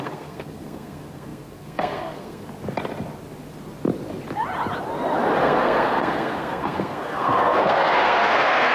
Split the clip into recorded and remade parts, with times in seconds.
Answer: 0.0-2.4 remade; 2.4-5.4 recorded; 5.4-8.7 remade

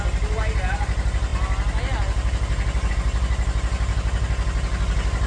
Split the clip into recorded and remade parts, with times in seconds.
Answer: 0.0-5.3 recorded